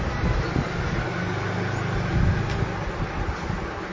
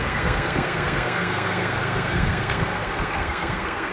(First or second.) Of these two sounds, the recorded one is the first